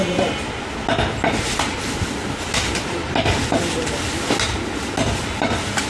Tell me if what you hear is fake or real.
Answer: real